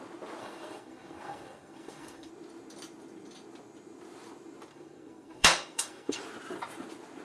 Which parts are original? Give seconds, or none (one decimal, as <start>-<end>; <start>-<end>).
0.0-0.4; 2.3-4.7; 6.2-7.2